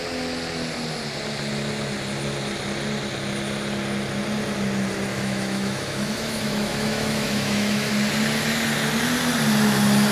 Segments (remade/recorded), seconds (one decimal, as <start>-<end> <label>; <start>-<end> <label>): 0.0-5.1 recorded; 5.1-7.9 remade; 7.9-10.1 recorded